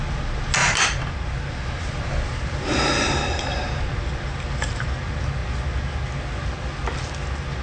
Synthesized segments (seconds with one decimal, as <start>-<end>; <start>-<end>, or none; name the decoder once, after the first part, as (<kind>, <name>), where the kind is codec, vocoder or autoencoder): 0.6-3.8 (vocoder, BigVGAN v2)